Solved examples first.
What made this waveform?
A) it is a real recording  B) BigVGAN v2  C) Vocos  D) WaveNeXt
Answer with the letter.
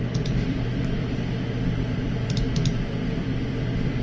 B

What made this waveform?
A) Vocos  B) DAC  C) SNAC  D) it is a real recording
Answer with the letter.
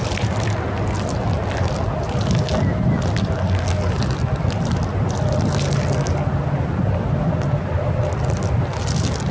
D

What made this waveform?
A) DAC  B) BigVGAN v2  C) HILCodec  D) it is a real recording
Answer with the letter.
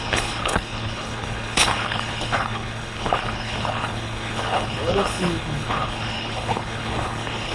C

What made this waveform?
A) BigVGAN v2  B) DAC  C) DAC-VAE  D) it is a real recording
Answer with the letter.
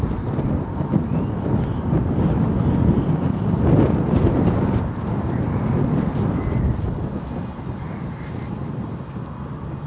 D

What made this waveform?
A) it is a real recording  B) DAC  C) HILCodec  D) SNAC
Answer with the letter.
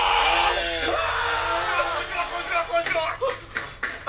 A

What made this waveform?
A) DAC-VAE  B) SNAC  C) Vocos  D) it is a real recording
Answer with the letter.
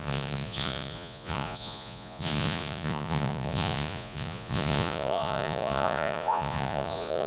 C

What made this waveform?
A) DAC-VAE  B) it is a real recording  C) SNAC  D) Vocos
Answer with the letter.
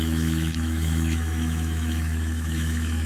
A